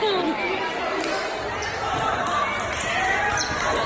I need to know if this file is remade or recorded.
recorded